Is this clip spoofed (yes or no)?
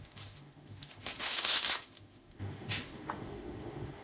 yes